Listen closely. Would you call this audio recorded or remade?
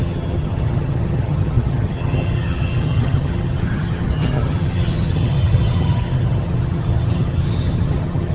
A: remade